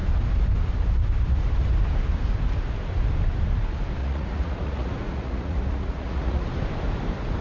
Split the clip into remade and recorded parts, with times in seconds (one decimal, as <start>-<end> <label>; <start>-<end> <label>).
0.0-4.0 recorded; 4.0-6.5 remade; 6.5-7.4 recorded

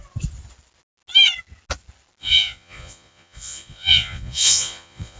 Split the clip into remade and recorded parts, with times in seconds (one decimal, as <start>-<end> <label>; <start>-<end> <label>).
0.0-2.2 recorded; 2.2-5.2 remade

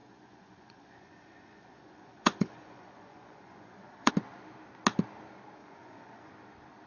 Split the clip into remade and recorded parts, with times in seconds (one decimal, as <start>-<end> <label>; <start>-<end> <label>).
0.0-4.1 remade; 4.1-5.6 recorded; 5.6-6.3 remade; 6.3-6.9 recorded

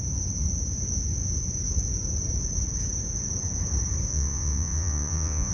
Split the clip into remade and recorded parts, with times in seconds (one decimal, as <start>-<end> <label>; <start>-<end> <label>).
0.0-4.1 recorded; 4.1-5.5 remade

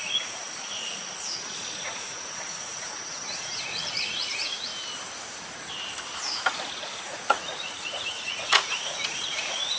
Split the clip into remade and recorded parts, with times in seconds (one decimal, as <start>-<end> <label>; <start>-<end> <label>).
0.0-0.4 remade; 0.4-1.2 recorded; 1.2-4.7 remade; 4.7-6.7 recorded; 6.7-9.8 remade

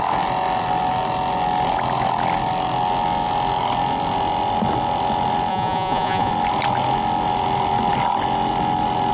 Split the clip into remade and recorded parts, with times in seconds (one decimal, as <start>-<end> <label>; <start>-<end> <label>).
0.0-5.5 recorded; 5.5-6.3 remade; 6.3-9.1 recorded

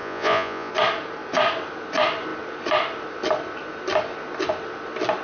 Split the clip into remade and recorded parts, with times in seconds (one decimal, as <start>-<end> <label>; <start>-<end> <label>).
0.0-0.7 remade; 0.7-5.2 recorded